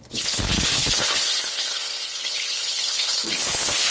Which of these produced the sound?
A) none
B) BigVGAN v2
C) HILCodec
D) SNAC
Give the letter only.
C